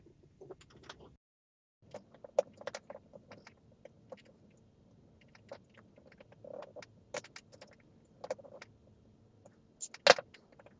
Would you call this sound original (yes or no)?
yes